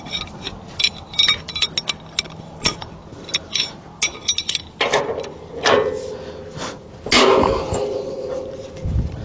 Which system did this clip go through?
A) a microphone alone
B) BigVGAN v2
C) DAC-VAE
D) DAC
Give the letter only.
A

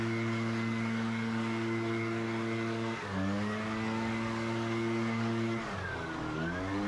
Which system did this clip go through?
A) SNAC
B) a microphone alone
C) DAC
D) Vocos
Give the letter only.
C